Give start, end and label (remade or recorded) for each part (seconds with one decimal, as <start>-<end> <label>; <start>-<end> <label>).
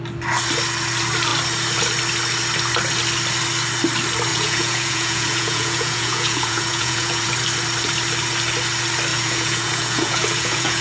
0.0-4.3 recorded; 4.3-7.3 remade; 7.3-9.1 recorded; 9.1-10.8 remade